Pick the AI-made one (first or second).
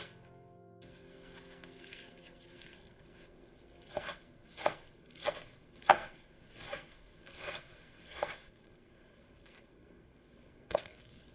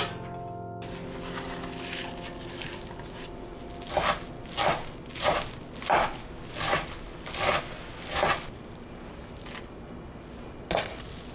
first